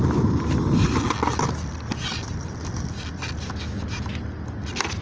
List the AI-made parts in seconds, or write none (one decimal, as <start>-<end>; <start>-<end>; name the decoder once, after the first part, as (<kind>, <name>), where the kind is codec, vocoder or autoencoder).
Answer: none